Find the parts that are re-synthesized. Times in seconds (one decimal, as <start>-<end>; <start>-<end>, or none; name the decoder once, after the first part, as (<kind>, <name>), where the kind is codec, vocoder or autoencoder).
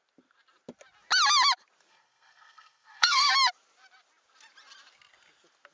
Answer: 1.9-3.3 (codec, SNAC)